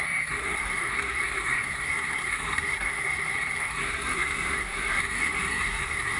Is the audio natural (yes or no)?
no